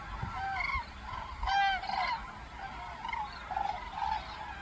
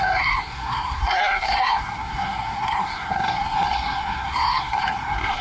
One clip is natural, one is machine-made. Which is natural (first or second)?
first